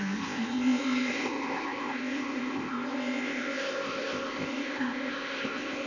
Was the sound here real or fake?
fake